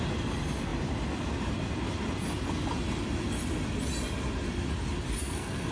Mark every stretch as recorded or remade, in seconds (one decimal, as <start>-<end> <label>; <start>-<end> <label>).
0.0-5.2 recorded; 5.2-5.7 remade